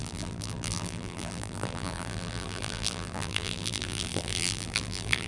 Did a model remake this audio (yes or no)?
yes